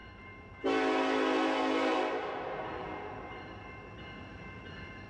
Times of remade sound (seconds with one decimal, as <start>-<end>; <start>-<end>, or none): 0.0-0.5; 1.9-5.1